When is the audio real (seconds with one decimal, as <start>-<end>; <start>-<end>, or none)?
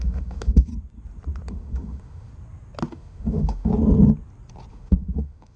0.7-1.5; 2.3-2.9; 3.7-4.7